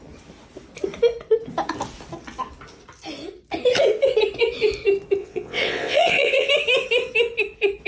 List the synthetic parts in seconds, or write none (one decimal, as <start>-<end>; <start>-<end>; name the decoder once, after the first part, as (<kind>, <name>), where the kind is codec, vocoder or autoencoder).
5.2-6.5 (vocoder, WaveNeXt)